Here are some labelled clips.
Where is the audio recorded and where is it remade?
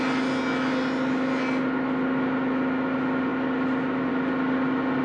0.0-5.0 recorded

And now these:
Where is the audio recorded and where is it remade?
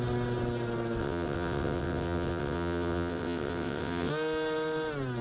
0.0-1.0 recorded; 1.0-4.1 remade; 4.1-5.2 recorded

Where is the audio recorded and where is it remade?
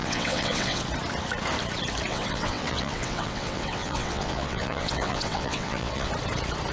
0.0-0.8 remade; 0.8-2.1 recorded; 2.1-6.1 remade; 6.1-6.7 recorded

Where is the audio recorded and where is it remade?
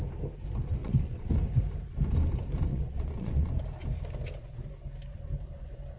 0.0-0.8 recorded; 0.8-1.3 remade; 1.3-2.7 recorded; 2.7-3.5 remade; 3.5-6.0 recorded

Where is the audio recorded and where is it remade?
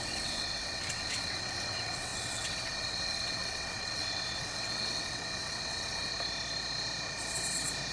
0.0-6.1 remade; 6.1-7.9 recorded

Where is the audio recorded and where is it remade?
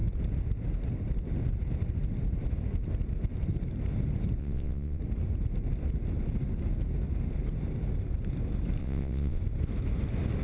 0.0-4.4 recorded; 4.4-5.0 remade; 5.0-8.8 recorded; 8.8-9.4 remade; 9.4-10.4 recorded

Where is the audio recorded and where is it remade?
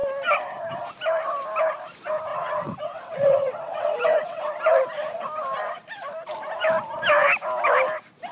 0.0-2.3 recorded; 2.3-4.5 remade; 4.5-8.3 recorded